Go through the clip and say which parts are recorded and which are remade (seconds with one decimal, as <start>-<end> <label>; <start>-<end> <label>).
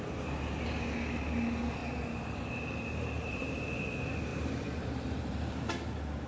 0.0-1.8 recorded; 1.8-3.6 remade; 3.6-4.3 recorded; 4.3-5.7 remade; 5.7-6.3 recorded